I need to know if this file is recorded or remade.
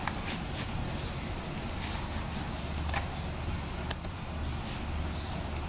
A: recorded